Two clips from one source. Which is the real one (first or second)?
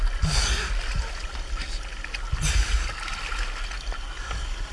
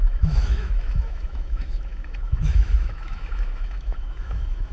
first